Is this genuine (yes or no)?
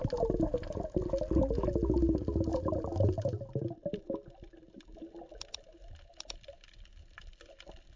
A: yes